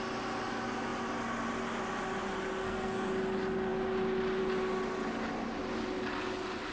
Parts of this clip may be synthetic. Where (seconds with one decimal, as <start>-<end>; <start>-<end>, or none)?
2.6-3.1